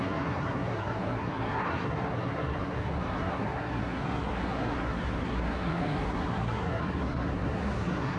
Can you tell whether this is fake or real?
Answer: fake